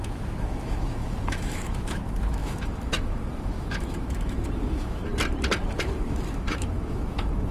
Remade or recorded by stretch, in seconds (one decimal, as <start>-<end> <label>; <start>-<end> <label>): 0.0-5.1 remade; 5.1-5.7 recorded; 5.7-7.5 remade